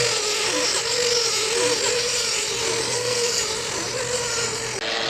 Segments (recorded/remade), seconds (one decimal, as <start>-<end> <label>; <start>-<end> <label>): 0.0-2.8 recorded; 2.8-3.4 remade; 3.4-5.1 recorded